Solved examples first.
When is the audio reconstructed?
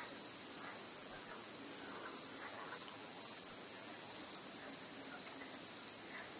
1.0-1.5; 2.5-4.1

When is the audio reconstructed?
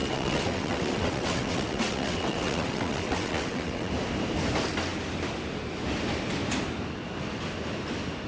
0.0-3.9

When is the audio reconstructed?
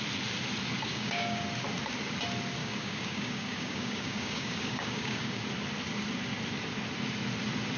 0.9-1.4; 2.6-5.4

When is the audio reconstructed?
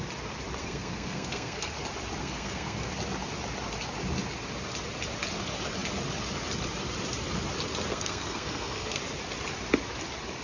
0.6-1.7; 2.2-2.9; 7.9-9.0